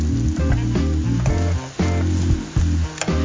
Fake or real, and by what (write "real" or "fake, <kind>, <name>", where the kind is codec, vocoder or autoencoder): real